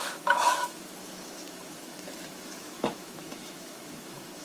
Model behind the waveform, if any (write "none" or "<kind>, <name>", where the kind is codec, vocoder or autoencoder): autoencoder, DAC-VAE